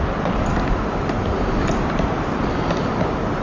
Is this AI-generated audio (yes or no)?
no